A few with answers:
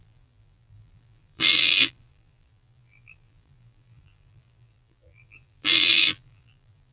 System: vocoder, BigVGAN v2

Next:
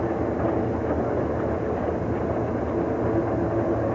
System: none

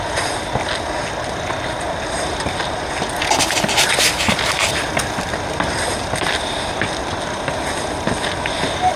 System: none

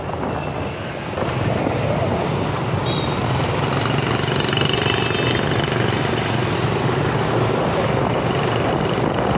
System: none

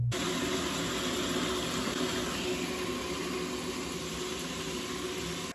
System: none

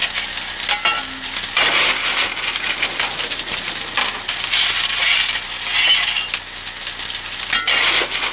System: none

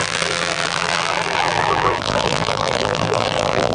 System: vocoder, BigVGAN v2